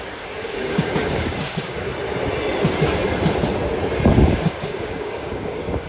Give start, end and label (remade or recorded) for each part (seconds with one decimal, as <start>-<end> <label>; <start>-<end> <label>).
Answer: 0.0-1.9 remade; 1.9-4.1 recorded; 4.1-5.9 remade